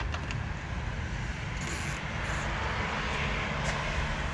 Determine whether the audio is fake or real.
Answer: real